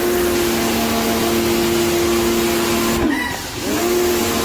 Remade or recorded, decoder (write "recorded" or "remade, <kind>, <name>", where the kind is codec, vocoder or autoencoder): recorded